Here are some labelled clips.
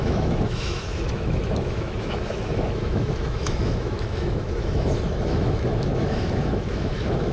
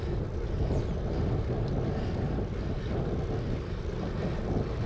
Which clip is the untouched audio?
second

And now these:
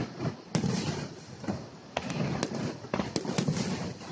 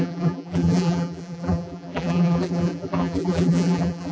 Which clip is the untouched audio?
first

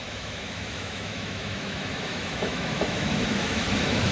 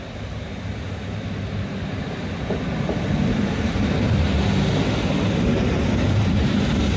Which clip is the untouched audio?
second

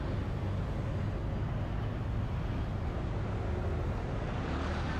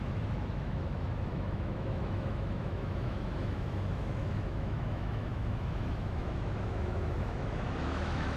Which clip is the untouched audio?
first